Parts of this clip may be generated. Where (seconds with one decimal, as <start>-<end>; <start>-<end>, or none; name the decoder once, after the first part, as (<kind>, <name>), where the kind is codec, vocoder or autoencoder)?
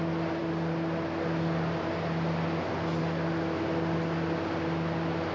none